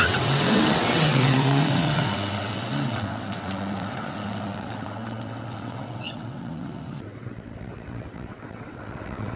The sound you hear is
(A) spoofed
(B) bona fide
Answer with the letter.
A